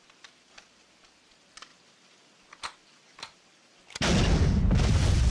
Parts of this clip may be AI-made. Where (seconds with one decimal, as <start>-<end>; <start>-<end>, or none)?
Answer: none